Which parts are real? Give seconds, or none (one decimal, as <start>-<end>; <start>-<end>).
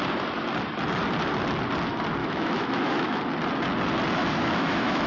0.0-2.2; 3.2-4.2